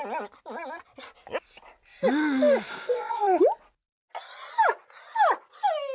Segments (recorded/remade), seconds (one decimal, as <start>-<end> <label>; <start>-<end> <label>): 0.0-2.7 recorded; 2.7-3.4 remade; 3.4-5.9 recorded